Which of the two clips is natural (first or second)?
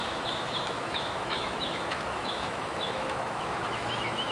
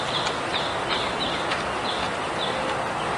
second